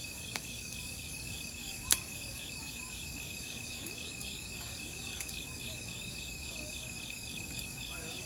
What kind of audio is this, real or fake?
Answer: fake